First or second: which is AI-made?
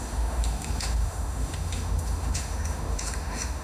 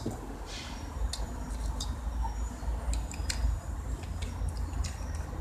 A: first